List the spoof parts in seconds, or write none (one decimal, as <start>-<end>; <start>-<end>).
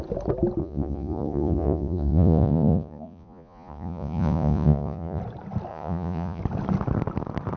0.6-5.2; 5.7-6.4